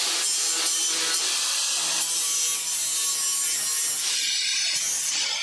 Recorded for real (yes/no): yes